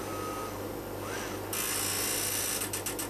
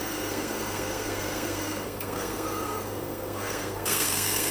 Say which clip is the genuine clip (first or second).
first